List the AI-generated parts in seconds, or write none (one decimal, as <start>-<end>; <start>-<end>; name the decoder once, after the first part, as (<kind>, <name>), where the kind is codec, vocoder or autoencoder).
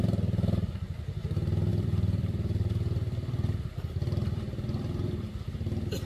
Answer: 1.7-5.4 (vocoder, BigVGAN v2)